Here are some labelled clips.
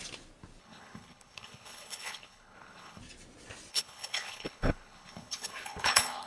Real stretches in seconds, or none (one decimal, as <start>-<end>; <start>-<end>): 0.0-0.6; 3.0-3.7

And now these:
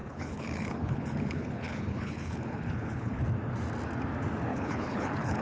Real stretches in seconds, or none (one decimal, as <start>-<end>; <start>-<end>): 3.2-4.5

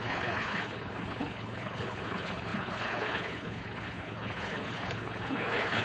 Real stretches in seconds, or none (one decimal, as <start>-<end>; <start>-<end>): none

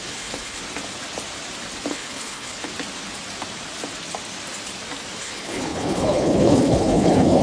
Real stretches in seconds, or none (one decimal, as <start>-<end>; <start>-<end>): 0.6-1.9; 2.7-5.2

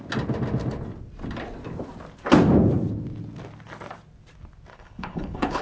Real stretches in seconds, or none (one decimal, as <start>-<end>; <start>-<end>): 0.0-4.7